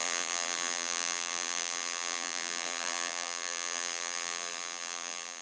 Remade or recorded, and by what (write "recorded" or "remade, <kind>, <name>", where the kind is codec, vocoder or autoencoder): remade, vocoder, BigVGAN v2